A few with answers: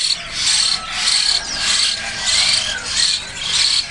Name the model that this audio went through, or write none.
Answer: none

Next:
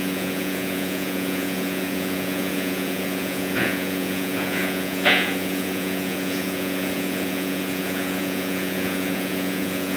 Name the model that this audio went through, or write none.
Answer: vocoder, Vocos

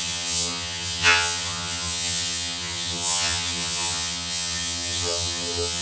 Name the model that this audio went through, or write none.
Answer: vocoder, HiFi-GAN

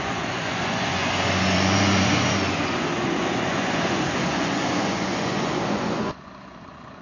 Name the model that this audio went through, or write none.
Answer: vocoder, Vocos